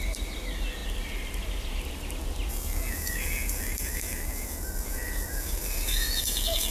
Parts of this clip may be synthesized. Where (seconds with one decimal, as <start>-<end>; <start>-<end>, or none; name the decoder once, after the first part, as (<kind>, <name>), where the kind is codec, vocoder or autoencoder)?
2.5-6.7 (autoencoder, DAC-VAE)